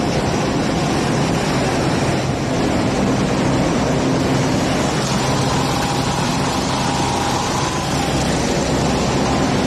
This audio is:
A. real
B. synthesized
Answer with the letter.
A